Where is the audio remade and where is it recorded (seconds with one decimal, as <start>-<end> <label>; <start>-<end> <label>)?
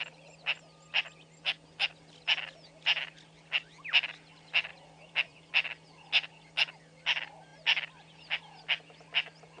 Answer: 0.0-4.7 recorded; 4.7-5.5 remade; 5.5-9.6 recorded